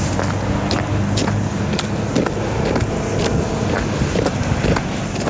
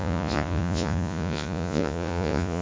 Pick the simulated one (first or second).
second